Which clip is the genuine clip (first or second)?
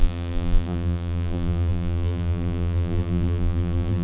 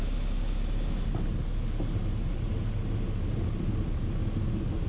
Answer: second